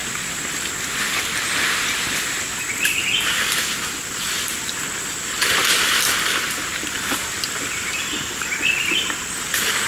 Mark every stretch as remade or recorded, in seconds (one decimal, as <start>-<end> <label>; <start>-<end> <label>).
0.0-9.9 recorded